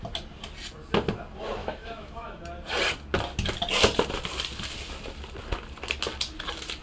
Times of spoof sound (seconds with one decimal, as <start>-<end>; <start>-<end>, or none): 1.6-2.4